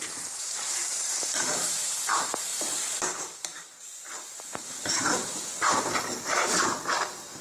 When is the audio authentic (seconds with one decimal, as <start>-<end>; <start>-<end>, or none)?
none